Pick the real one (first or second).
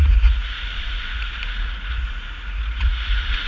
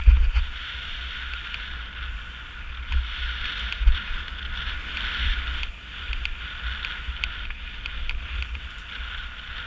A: second